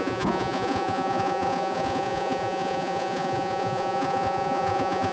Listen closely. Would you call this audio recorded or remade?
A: remade